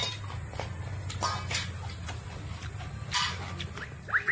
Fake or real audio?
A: real